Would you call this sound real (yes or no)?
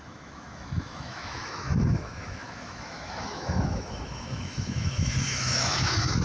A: no